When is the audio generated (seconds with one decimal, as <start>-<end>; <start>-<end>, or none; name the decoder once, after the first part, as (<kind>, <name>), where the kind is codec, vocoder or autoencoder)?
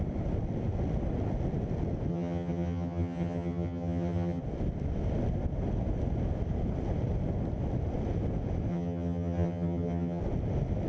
2.1-4.4 (vocoder, HiFi-GAN); 8.7-10.2